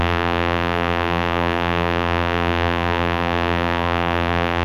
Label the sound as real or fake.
fake